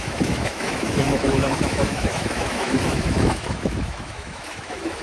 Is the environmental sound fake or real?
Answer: fake